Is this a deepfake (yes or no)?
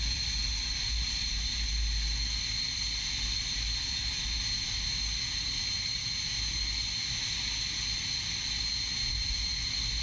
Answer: no